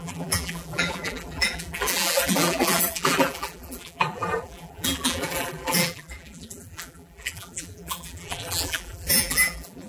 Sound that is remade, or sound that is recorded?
remade